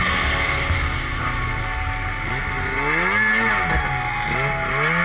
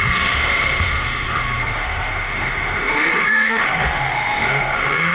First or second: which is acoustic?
first